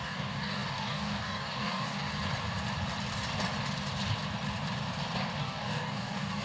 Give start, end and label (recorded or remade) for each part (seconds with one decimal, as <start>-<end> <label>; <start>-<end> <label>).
0.0-2.1 remade; 2.1-5.4 recorded; 5.4-6.4 remade